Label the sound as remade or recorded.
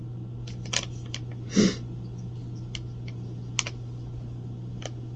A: recorded